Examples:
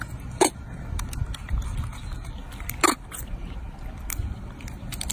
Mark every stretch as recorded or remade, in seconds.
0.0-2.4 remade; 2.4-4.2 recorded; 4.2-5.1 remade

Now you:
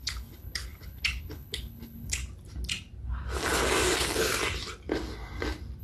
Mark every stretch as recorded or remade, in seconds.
0.0-2.2 remade; 2.2-5.8 recorded

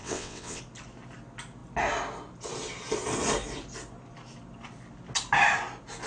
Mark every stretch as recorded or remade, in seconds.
0.0-0.6 remade; 0.6-6.1 recorded

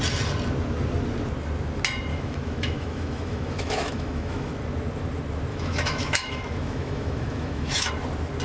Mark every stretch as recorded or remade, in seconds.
0.0-2.1 recorded; 2.1-4.5 remade; 4.5-5.5 recorded; 5.5-7.9 remade; 7.9-8.4 recorded

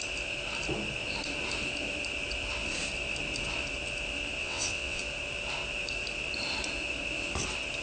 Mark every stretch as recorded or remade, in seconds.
0.0-4.4 recorded; 4.4-5.0 remade; 5.0-7.8 recorded

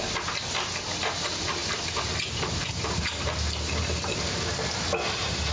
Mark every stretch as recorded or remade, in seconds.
0.0-5.5 recorded

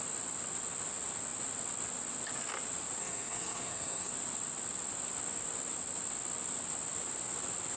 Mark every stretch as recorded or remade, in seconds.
0.0-3.0 recorded; 3.0-4.1 remade; 4.1-7.8 recorded

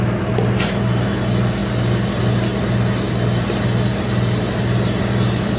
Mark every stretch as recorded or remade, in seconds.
0.0-5.6 recorded